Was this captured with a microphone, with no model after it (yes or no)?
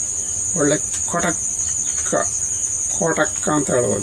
yes